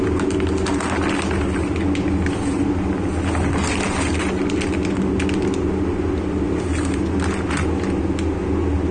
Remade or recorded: recorded